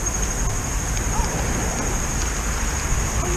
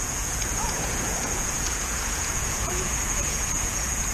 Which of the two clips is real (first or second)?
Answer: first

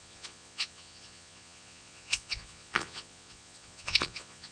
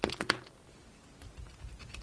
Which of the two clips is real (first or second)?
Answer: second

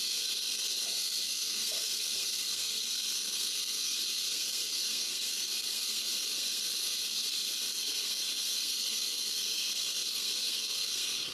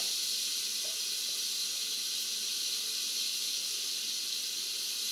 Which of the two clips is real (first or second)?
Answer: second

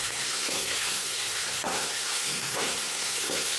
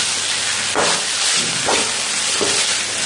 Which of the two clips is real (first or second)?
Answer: second